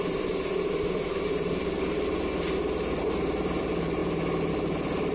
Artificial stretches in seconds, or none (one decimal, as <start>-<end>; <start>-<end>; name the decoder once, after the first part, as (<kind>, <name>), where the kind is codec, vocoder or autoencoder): none